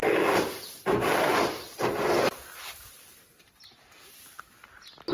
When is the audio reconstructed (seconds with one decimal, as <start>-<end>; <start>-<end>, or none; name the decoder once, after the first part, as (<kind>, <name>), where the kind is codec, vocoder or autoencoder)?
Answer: 1.3-4.4 (vocoder, BigVGAN v2)